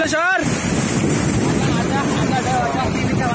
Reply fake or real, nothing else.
real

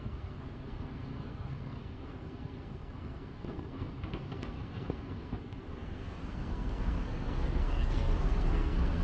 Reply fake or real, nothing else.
fake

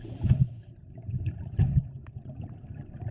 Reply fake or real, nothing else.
real